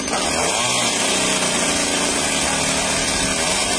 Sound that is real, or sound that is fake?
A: real